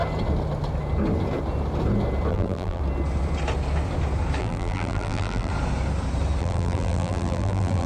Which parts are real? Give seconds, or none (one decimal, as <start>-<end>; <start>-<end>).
0.0-2.3; 2.8-4.4; 5.5-6.4